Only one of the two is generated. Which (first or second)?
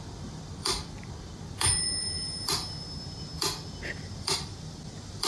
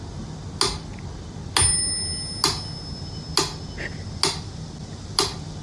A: first